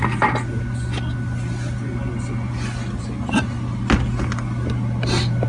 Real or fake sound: real